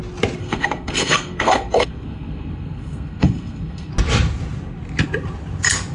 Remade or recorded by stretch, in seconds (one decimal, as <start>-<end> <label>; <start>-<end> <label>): 0.0-0.4 recorded; 0.4-3.9 remade; 3.9-5.9 recorded